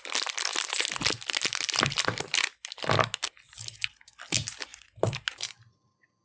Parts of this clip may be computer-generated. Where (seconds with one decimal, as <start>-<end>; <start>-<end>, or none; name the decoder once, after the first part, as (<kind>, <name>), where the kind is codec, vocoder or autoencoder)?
none

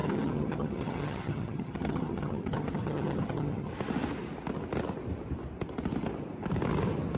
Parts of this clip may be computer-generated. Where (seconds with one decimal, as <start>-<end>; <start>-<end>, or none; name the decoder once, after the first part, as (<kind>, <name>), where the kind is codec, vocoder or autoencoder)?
0.0-3.7 (vocoder, HiFi-GAN)

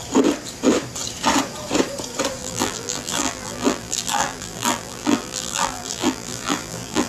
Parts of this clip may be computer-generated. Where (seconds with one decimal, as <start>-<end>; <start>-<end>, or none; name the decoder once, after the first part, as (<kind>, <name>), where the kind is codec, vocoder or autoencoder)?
2.4-7.1 (vocoder, BigVGAN v2)

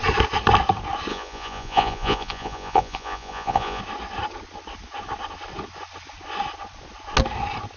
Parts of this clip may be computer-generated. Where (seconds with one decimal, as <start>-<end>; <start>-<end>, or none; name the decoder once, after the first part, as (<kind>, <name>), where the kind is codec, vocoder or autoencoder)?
1.1-3.8 (vocoder, Vocos)

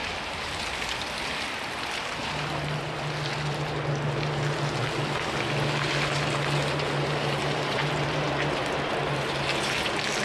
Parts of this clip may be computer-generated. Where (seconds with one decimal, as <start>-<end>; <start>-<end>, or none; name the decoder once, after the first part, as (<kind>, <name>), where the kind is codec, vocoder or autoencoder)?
0.0-0.6 (vocoder, BigVGAN v2); 2.2-2.8; 7.4-7.9

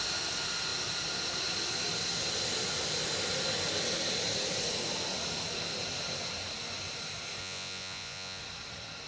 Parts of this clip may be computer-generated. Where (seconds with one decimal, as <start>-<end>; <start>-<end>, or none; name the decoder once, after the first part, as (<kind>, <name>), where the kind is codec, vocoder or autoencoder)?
7.4-8.4 (vocoder, Vocos)

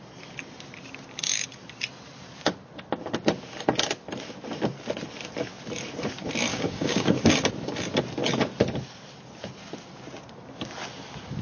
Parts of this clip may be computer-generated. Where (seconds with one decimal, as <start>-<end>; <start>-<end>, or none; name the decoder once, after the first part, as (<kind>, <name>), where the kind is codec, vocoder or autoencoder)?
6.5-7.3 (codec, DAC)